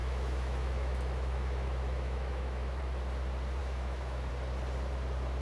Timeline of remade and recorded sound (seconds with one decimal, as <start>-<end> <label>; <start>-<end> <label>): 0.0-2.8 remade; 2.8-3.6 recorded; 3.6-4.3 remade; 4.3-5.4 recorded